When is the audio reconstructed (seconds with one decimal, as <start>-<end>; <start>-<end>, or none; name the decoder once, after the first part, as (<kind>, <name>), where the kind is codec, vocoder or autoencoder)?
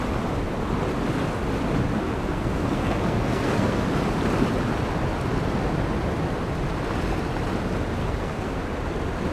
2.0-3.8 (codec, SNAC); 8.0-8.6